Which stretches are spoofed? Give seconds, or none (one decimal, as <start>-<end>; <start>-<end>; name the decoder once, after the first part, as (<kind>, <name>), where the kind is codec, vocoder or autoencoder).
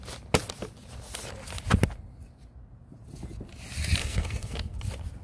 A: 4.0-4.8 (codec, SNAC)